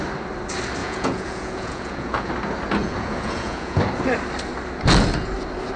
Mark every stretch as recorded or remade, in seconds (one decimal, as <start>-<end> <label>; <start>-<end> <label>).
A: 0.0-0.8 recorded; 0.8-2.3 remade; 2.3-2.8 recorded; 2.8-3.8 remade; 3.8-5.8 recorded